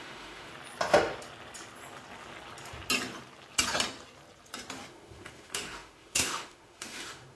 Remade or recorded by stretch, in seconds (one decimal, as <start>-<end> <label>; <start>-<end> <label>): 0.0-0.5 remade; 0.5-4.9 recorded; 4.9-7.4 remade